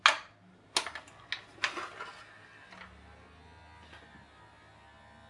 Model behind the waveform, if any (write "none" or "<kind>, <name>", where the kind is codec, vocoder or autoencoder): none